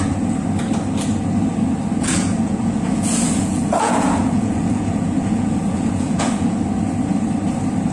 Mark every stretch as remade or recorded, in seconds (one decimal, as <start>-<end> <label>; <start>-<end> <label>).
0.0-2.1 recorded; 2.1-6.6 remade; 6.6-7.9 recorded